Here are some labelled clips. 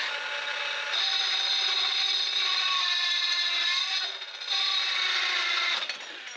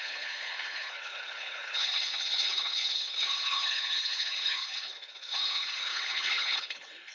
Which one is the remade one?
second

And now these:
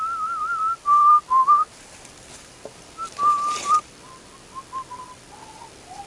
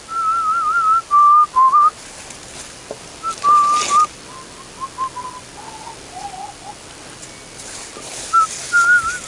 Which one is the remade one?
first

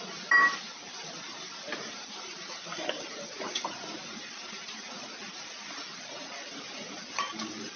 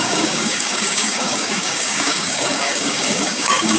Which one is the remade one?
second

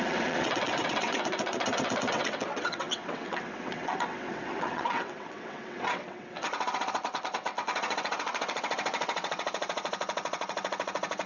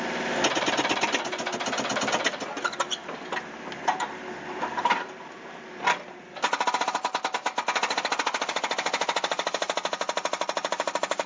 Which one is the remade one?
first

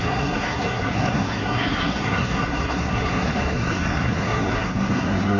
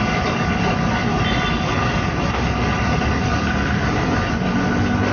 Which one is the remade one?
first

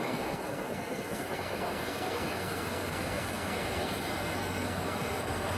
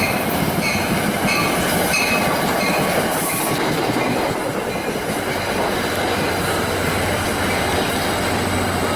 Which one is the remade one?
first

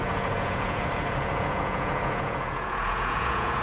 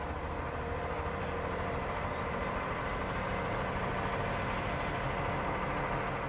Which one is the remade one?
first